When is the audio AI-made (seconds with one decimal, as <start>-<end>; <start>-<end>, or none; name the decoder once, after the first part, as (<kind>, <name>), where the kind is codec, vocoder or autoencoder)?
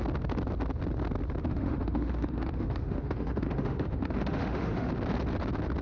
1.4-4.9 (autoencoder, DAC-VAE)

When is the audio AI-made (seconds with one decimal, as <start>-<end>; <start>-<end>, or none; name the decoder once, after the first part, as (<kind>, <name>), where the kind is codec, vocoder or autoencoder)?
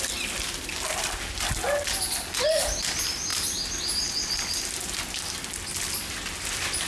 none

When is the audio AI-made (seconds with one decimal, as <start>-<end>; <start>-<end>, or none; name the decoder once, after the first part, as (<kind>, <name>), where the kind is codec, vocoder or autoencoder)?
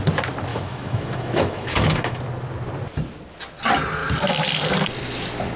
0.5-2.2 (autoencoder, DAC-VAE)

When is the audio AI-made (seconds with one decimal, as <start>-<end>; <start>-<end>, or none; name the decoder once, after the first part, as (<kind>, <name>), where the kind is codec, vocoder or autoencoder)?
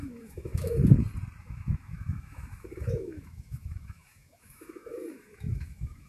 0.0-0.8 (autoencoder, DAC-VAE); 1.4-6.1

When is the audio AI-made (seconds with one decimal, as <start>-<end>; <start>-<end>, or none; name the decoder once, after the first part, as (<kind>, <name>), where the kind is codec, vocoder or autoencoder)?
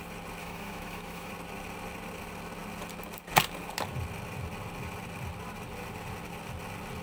0.4-1.3 (autoencoder, DAC-VAE)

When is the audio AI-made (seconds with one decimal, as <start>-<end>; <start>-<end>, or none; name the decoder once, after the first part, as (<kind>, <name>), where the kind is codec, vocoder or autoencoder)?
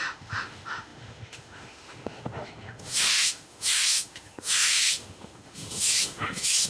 0.0-6.7 (autoencoder, DAC-VAE)